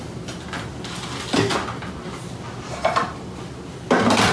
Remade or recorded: recorded